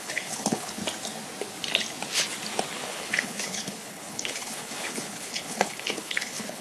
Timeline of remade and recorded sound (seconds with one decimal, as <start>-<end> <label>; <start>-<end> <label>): 0.0-0.8 remade; 0.8-2.8 recorded; 2.8-6.6 remade